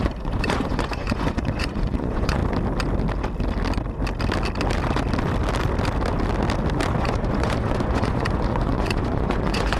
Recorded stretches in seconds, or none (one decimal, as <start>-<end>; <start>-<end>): 2.4-7.0